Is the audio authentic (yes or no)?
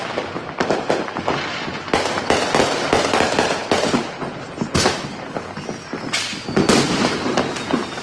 yes